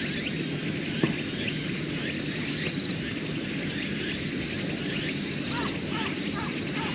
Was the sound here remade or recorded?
recorded